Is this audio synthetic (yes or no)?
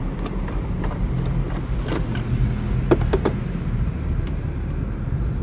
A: no